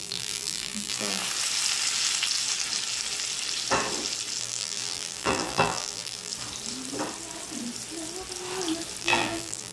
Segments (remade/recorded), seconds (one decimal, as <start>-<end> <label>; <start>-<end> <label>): 0.0-1.2 remade; 1.2-4.4 recorded; 4.4-6.3 remade; 6.3-9.0 recorded; 9.0-9.7 remade